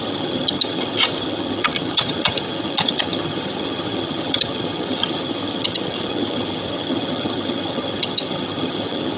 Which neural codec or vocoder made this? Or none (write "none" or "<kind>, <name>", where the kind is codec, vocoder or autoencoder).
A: vocoder, HiFi-GAN